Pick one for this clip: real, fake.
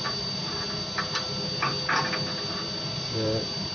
real